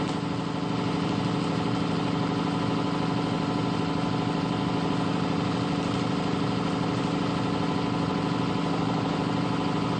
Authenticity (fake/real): real